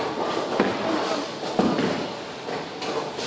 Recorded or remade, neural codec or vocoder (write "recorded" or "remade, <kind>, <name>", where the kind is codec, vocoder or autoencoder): recorded